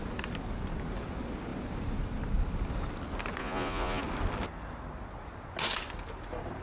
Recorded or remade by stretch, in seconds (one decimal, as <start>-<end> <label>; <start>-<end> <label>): 0.0-3.4 recorded; 3.4-4.0 remade; 4.0-6.6 recorded